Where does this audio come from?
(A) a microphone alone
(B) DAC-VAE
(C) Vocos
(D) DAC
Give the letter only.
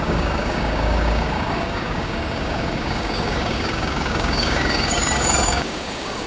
D